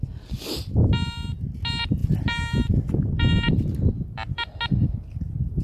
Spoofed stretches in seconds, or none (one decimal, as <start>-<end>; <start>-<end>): 2.0-4.5